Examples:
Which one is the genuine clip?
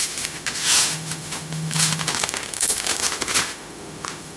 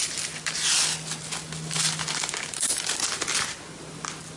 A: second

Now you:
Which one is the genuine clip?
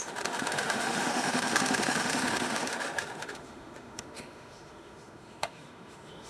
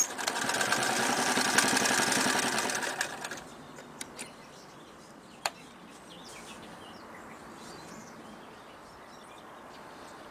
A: second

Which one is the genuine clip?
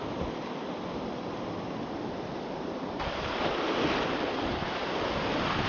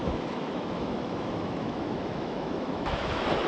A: first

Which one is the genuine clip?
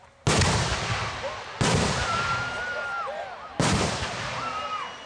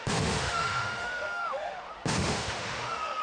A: first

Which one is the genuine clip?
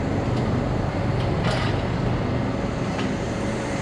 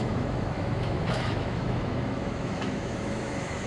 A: first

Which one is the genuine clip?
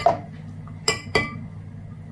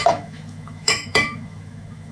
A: first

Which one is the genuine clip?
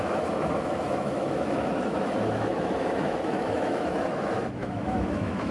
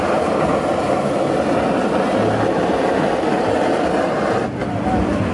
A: second